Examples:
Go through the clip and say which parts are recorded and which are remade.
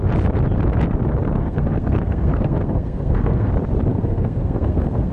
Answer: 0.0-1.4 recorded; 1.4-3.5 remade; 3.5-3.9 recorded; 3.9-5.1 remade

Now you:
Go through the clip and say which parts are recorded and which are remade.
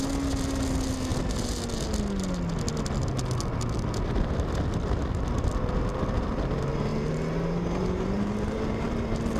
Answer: 0.0-6.9 recorded; 6.9-9.0 remade; 9.0-9.4 recorded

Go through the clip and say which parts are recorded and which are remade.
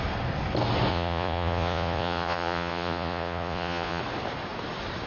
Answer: 0.0-0.9 recorded; 0.9-4.0 remade; 4.0-5.1 recorded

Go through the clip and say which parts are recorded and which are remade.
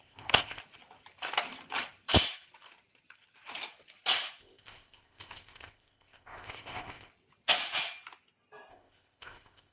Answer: 0.0-0.6 remade; 0.6-4.4 recorded; 4.4-7.1 remade; 7.1-8.7 recorded; 8.7-9.7 remade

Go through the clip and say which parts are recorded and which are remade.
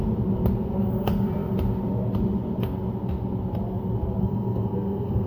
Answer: 0.0-4.2 recorded; 4.2-5.3 remade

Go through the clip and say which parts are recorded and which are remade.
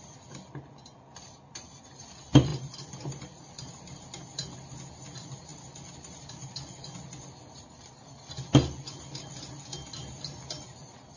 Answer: 0.0-11.2 recorded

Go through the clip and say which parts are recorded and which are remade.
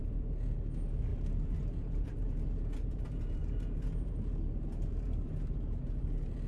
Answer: 0.0-6.5 remade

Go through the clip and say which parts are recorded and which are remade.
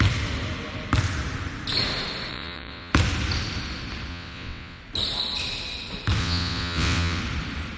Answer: 0.0-2.3 recorded; 2.3-2.9 remade; 2.9-4.1 recorded; 4.1-4.8 remade; 4.8-6.2 recorded; 6.2-7.2 remade; 7.2-7.8 recorded